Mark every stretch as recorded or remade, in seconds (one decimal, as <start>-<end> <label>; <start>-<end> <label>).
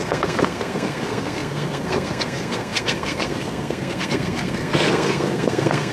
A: 0.0-5.9 remade